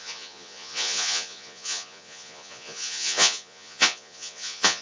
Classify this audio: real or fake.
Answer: fake